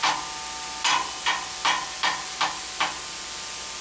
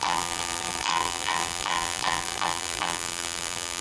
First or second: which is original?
first